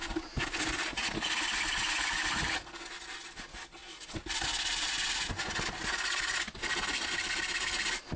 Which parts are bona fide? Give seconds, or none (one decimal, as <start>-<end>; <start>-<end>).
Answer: 0.0-8.2